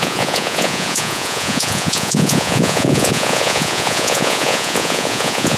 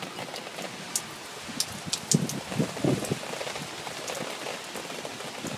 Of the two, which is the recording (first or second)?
second